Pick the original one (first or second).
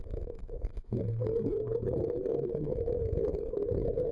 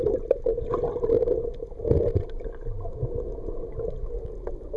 second